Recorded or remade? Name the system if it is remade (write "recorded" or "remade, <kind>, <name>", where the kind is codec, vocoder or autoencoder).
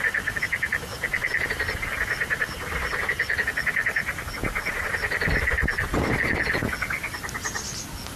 recorded